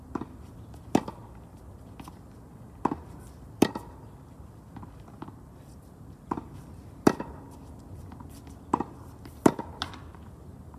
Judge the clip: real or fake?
real